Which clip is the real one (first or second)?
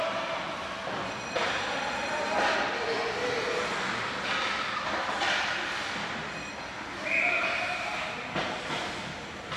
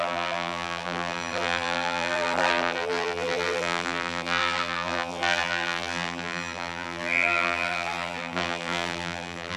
first